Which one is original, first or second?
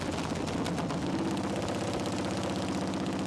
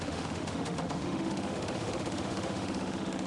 first